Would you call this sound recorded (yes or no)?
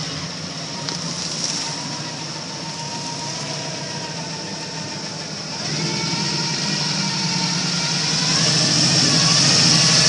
yes